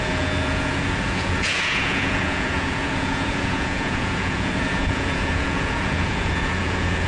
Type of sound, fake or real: fake